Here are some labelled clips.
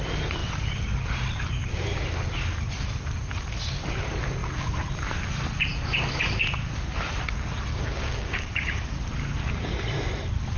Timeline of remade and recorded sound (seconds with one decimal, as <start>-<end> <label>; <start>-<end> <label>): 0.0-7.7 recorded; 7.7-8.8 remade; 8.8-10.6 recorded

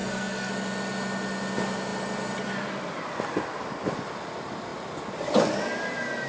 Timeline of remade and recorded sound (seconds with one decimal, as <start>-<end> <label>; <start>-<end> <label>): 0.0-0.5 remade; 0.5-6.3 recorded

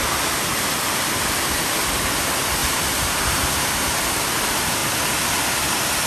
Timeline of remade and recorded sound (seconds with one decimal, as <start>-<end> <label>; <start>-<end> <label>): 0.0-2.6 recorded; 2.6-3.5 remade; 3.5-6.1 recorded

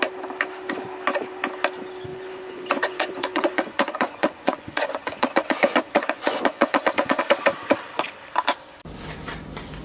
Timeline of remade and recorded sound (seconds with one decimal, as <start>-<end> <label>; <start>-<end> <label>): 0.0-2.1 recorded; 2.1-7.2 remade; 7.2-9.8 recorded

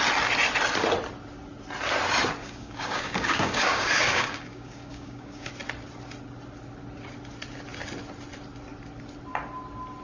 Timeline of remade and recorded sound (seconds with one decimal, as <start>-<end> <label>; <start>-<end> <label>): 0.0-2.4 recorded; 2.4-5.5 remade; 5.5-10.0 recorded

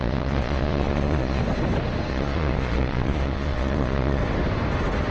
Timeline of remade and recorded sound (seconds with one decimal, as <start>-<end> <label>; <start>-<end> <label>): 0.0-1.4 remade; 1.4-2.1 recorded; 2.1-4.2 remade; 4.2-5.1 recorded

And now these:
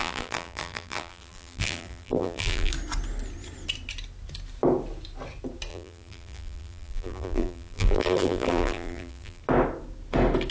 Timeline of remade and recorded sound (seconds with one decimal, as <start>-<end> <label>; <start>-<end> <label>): 0.0-2.7 remade; 2.7-5.7 recorded; 5.7-9.4 remade; 9.4-10.5 recorded